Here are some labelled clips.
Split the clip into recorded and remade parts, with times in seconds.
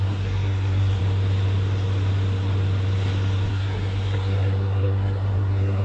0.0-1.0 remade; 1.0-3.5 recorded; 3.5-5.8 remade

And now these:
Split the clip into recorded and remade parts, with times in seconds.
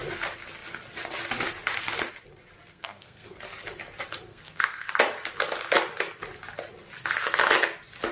0.0-2.7 recorded; 2.7-3.4 remade; 3.4-4.3 recorded; 4.3-4.9 remade; 4.9-8.1 recorded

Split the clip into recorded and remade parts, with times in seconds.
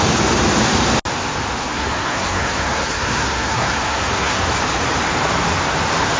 0.0-1.6 recorded; 1.6-4.5 remade; 4.5-6.2 recorded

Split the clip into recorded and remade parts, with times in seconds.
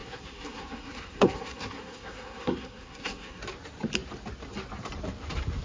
0.0-3.4 remade; 3.4-5.6 recorded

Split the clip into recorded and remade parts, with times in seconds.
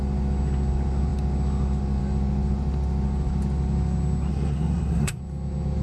0.0-4.3 recorded; 4.3-5.2 remade; 5.2-5.8 recorded